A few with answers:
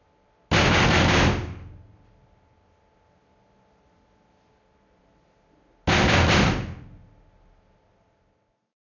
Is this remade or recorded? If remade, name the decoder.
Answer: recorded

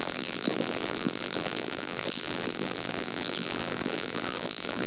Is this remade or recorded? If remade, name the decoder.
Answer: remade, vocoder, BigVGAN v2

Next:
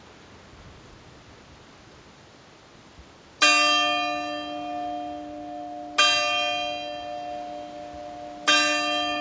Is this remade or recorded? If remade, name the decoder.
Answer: recorded